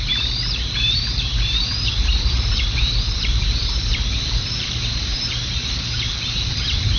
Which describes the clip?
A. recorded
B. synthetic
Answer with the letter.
B